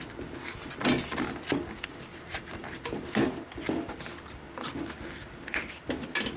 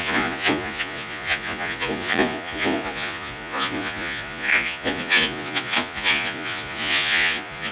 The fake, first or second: second